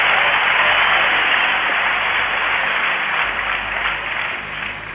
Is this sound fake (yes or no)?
no